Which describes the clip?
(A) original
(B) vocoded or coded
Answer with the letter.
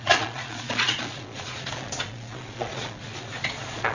B